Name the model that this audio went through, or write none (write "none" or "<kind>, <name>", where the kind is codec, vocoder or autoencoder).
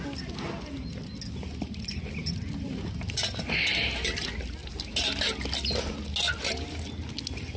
none